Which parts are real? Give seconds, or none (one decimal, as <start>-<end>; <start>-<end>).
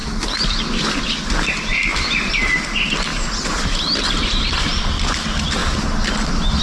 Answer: 0.0-1.7; 2.4-3.1; 4.5-6.6